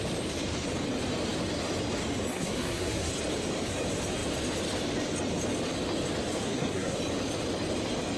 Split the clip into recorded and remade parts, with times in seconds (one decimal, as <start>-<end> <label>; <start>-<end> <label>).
0.0-2.3 recorded; 2.3-3.1 remade; 3.1-6.4 recorded; 6.4-7.0 remade; 7.0-8.2 recorded

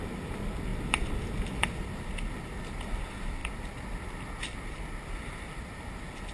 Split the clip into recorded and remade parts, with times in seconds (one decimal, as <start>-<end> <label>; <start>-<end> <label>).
0.0-6.3 recorded

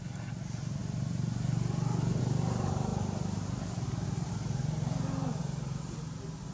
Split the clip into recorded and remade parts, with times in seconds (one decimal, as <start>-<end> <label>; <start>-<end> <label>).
0.0-6.5 recorded

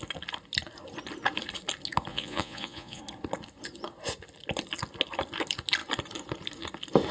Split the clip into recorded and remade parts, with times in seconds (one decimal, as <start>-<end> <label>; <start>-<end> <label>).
0.0-2.1 recorded; 2.1-3.0 remade; 3.0-7.1 recorded

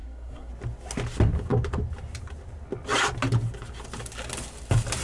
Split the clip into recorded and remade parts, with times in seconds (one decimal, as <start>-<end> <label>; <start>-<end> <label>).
0.0-0.5 remade; 0.5-5.0 recorded

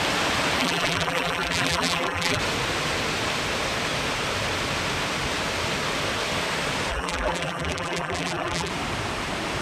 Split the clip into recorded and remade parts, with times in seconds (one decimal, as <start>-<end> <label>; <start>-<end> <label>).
0.0-0.6 recorded; 0.6-2.4 remade; 2.4-6.9 recorded; 6.9-8.7 remade; 8.7-9.6 recorded

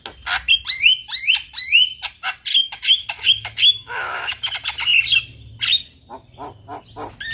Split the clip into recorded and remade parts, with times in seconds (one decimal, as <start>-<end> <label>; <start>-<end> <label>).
0.0-2.5 recorded; 2.5-4.5 remade; 4.5-7.3 recorded

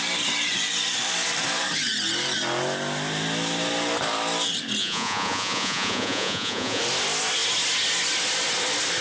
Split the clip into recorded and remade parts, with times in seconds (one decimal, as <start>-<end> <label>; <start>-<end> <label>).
0.0-4.8 recorded; 4.8-6.8 remade; 6.8-9.0 recorded